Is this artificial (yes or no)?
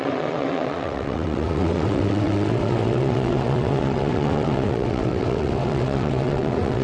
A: yes